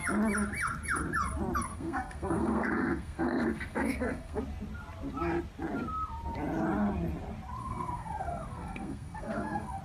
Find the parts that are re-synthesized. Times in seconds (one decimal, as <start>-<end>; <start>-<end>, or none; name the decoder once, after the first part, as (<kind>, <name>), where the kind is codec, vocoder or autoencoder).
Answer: 1.7-4.4 (codec, SNAC); 7.6-9.8

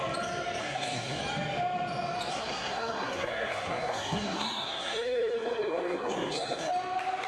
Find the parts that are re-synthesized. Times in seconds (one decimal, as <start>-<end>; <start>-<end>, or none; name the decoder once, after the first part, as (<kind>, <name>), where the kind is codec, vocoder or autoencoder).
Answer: 0.6-1.2 (codec, SNAC); 2.3-6.7

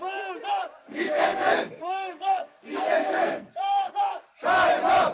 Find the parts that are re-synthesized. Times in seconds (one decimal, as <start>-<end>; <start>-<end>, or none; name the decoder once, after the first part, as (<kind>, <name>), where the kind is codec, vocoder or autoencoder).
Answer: 0.8-3.9 (codec, SNAC)

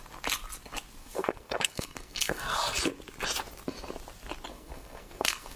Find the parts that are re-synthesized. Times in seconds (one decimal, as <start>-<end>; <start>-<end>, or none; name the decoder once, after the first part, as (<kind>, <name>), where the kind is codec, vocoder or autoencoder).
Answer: 1.0-2.8 (codec, SNAC); 4.5-5.6

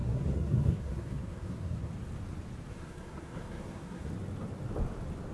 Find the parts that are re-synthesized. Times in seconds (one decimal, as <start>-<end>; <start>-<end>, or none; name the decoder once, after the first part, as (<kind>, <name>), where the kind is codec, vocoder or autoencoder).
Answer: 0.0-1.9 (codec, SNAC); 2.7-4.1